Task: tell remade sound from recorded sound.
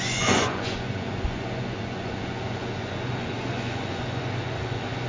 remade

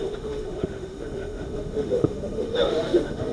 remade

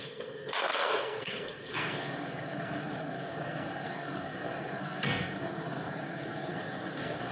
remade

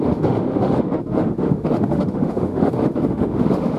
remade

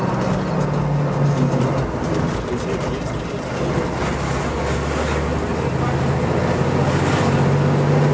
recorded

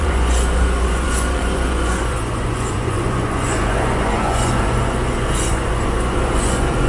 remade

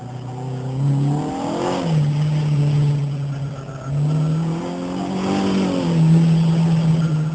recorded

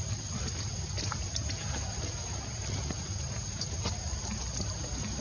recorded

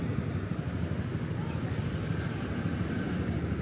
recorded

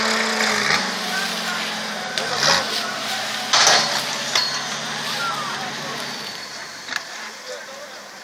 recorded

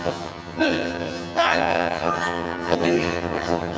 remade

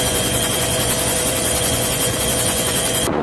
remade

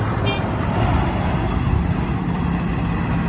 recorded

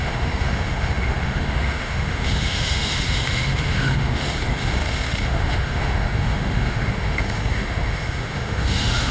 remade